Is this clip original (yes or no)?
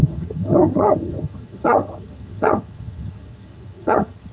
no